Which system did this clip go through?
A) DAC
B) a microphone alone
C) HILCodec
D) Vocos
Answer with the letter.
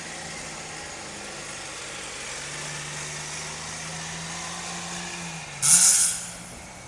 B